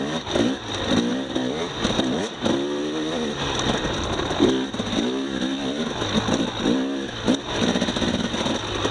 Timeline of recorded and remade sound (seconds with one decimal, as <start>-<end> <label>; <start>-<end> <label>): 0.0-8.9 recorded